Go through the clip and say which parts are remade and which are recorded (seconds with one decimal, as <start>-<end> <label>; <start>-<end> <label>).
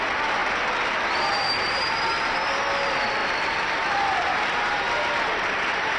0.0-0.4 recorded; 0.4-1.8 remade; 1.8-3.2 recorded; 3.2-6.0 remade